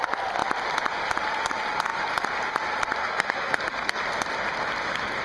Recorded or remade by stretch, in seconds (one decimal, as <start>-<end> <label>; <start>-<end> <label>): 0.0-3.0 recorded; 3.0-4.0 remade; 4.0-5.2 recorded

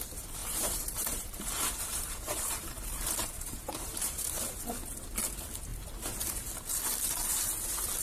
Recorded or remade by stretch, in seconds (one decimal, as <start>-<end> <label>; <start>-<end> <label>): 0.0-0.4 recorded; 0.4-4.6 remade; 4.6-8.0 recorded